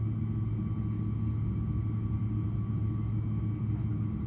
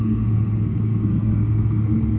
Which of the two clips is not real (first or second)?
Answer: second